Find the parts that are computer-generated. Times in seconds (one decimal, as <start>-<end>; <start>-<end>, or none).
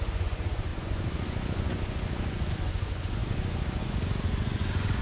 0.0-5.0